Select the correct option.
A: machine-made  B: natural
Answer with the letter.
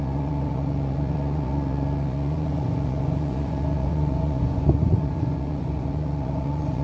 A